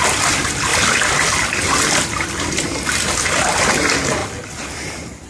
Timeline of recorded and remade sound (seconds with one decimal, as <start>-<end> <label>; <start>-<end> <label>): 0.0-5.3 recorded